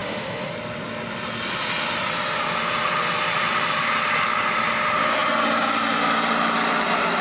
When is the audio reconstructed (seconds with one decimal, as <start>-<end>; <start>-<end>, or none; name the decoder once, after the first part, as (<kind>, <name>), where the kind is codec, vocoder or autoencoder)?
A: 0.0-0.5 (autoencoder, DAC-VAE)